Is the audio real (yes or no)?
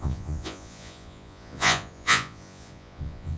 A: no